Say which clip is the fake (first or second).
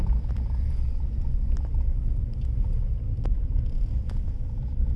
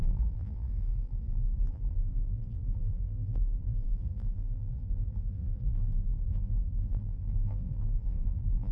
second